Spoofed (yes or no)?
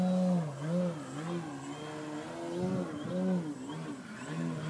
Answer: no